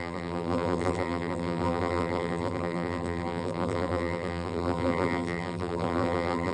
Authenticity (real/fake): fake